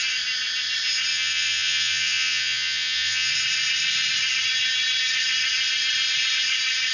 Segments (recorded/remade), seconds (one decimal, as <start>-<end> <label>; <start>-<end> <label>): 0.0-1.1 recorded; 1.1-3.3 remade; 3.3-6.9 recorded